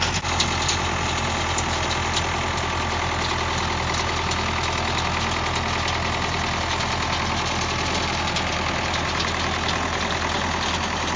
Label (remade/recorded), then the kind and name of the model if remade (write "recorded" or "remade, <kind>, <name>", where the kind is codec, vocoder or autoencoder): recorded